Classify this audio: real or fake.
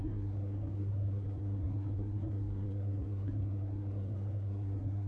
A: fake